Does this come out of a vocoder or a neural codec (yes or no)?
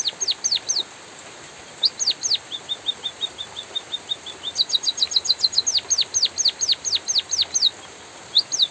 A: no